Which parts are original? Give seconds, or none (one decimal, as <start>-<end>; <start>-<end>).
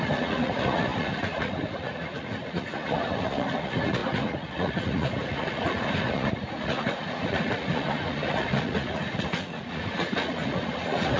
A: none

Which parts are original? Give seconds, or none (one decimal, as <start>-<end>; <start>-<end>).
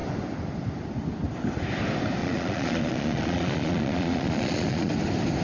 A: 0.0-2.2; 4.9-5.4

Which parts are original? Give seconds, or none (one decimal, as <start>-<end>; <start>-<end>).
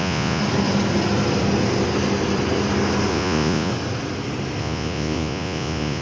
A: 0.4-3.1; 3.7-4.6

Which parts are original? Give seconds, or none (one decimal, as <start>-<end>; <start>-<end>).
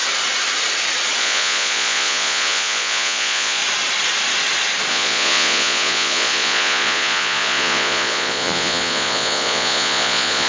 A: 0.0-1.2; 3.6-4.9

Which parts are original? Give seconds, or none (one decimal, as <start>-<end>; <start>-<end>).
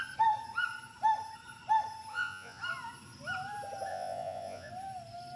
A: 0.0-2.1; 2.6-3.9; 4.7-5.4